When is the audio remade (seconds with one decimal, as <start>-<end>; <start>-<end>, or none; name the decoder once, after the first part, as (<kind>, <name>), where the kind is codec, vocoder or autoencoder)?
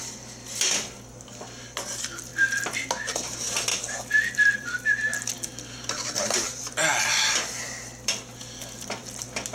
3.7-4.7 (vocoder, BigVGAN v2)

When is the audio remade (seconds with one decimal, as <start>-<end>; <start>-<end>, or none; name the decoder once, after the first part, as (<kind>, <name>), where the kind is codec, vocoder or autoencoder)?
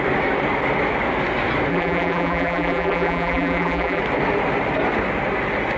1.7-4.0 (vocoder, BigVGAN v2)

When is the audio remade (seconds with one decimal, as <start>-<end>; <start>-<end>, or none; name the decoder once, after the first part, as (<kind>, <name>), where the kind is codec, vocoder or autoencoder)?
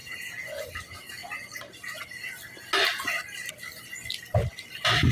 0.0-1.2 (vocoder, BigVGAN v2); 3.5-5.1